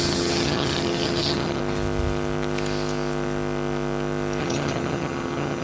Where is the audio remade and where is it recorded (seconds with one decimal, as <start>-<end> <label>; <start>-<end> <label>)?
0.0-1.6 remade; 1.6-4.4 recorded; 4.4-5.6 remade